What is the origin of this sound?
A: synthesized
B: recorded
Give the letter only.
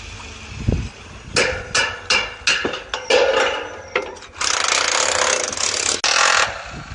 B